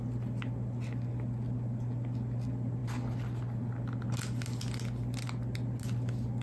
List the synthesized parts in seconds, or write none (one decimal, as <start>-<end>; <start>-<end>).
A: none